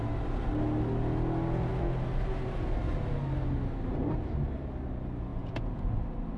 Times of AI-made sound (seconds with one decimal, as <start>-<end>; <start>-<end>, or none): 5.3-6.0